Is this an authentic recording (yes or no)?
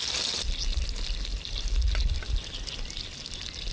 yes